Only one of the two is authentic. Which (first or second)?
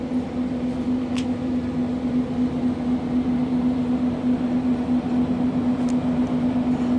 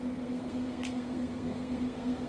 first